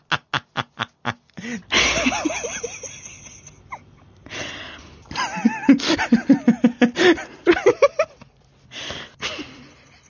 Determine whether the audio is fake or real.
real